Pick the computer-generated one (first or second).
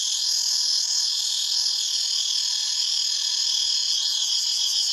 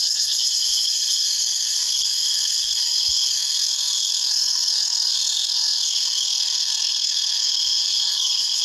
second